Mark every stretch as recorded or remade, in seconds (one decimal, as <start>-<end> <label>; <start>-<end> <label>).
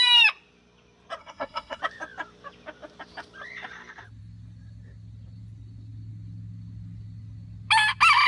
0.0-1.2 recorded; 1.2-1.8 remade; 1.8-8.3 recorded